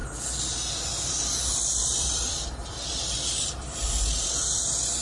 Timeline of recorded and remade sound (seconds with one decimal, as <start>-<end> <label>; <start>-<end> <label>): 0.0-1.0 recorded; 1.0-5.0 remade